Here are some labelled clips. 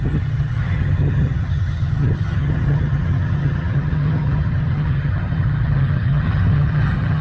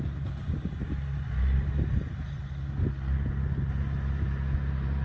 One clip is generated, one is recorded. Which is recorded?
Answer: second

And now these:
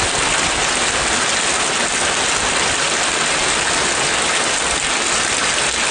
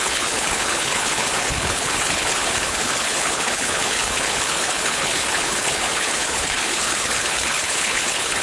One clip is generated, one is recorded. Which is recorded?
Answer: first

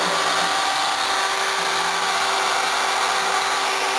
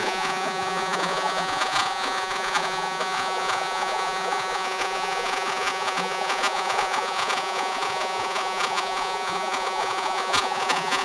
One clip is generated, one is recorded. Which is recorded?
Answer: first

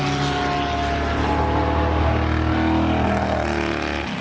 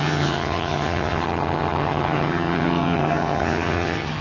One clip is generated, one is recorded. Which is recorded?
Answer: first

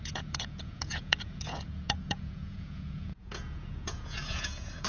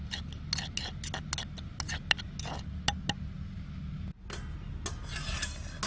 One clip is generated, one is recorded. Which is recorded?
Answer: second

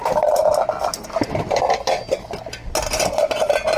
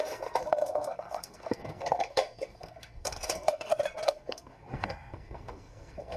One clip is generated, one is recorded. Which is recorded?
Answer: first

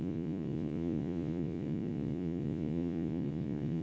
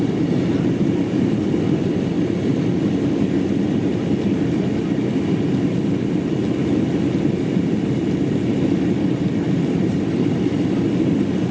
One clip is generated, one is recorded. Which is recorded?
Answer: second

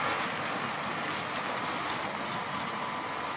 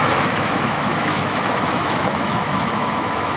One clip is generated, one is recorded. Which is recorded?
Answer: first